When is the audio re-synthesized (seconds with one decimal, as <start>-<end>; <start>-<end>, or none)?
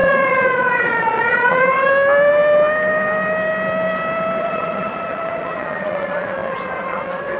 0.0-1.9; 4.4-7.4